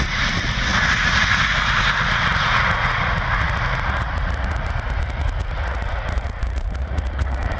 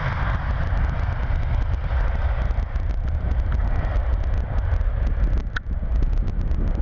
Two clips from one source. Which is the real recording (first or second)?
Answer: second